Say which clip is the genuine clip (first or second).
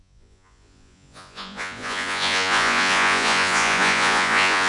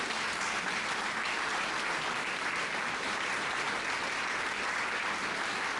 second